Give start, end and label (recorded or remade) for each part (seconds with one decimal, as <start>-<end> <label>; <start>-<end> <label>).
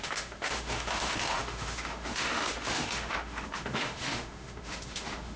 0.0-5.4 remade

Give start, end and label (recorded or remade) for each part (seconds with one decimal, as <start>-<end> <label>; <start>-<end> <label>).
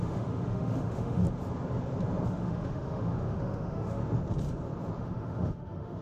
0.0-1.2 remade; 1.2-2.3 recorded; 2.3-4.0 remade; 4.0-5.0 recorded; 5.0-6.0 remade